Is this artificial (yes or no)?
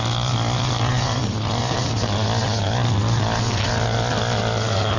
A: no